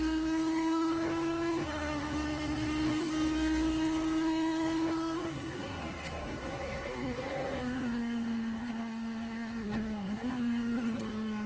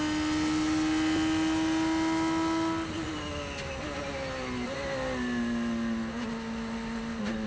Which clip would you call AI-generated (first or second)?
first